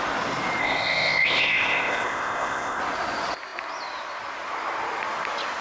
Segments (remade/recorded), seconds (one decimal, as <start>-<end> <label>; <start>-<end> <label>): 0.0-0.6 recorded; 0.6-2.8 remade; 2.8-5.6 recorded